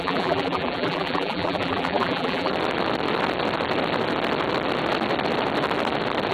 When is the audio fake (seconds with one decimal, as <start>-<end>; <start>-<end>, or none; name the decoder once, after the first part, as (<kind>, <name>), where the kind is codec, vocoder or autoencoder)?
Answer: 0.0-2.5 (vocoder, BigVGAN v2)